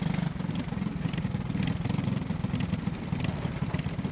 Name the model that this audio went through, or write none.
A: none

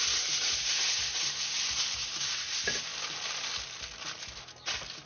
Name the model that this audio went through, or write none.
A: none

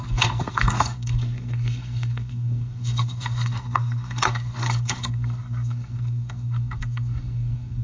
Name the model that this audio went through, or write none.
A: codec, SNAC